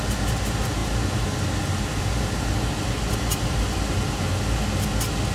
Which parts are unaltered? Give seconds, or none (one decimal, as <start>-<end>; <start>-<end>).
0.0-5.3